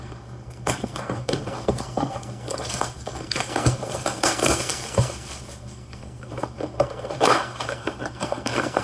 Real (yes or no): no